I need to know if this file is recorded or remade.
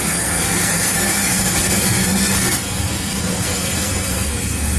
remade